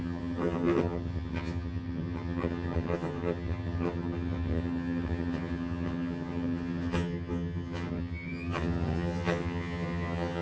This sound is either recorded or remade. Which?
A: remade